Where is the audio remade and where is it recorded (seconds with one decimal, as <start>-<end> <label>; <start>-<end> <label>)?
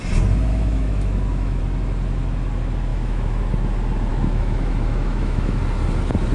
0.0-0.5 recorded; 0.5-1.6 remade; 1.6-2.9 recorded; 2.9-3.4 remade; 3.4-4.1 recorded; 4.1-5.6 remade; 5.6-6.3 recorded